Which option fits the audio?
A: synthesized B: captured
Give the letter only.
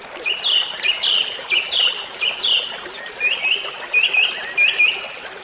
B